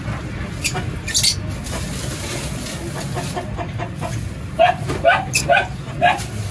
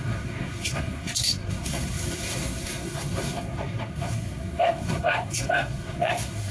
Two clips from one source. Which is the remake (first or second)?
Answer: second